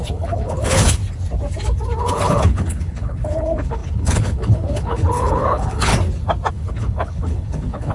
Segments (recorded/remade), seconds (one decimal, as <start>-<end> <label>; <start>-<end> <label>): 0.0-1.0 remade; 1.0-2.0 recorded; 2.0-5.9 remade; 5.9-6.5 recorded; 6.5-7.9 remade